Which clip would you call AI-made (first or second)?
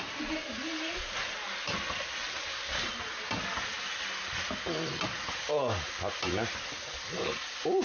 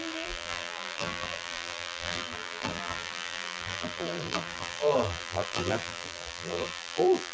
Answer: second